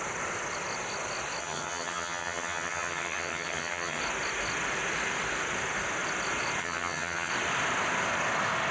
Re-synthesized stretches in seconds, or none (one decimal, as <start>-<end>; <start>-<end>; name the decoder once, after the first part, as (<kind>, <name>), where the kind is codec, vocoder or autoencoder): 1.4-4.0 (vocoder, HiFi-GAN); 6.6-7.3